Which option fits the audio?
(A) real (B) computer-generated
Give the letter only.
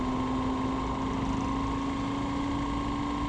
A